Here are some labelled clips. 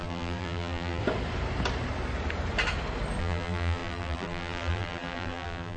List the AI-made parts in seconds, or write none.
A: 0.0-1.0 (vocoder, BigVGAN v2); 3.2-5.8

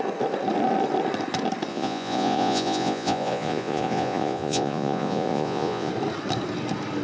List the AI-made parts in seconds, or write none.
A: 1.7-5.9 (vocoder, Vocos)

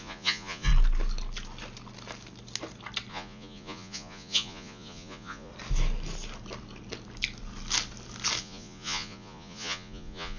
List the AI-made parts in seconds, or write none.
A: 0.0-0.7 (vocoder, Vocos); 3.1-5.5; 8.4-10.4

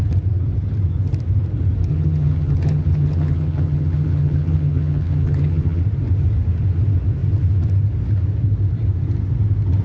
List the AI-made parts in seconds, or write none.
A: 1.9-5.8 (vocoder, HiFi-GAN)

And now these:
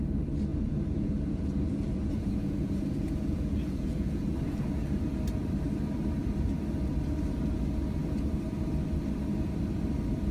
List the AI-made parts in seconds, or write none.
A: 0.5-4.8 (vocoder, Vocos)